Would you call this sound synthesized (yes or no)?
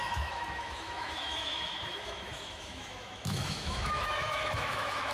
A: yes